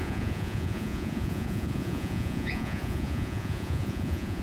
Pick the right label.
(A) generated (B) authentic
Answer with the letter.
A